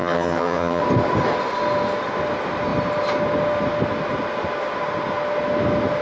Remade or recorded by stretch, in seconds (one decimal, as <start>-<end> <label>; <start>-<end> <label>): 0.0-0.8 remade; 0.8-6.0 recorded